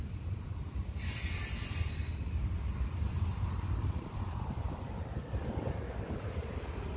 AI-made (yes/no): yes